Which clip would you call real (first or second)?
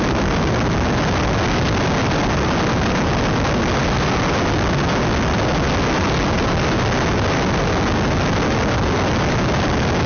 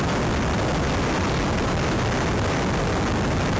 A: first